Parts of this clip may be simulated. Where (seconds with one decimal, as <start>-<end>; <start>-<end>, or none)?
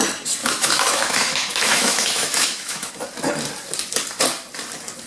0.4-2.9